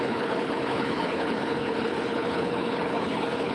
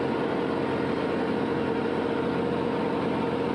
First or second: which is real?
second